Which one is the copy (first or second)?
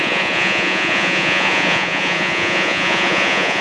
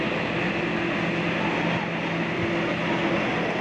first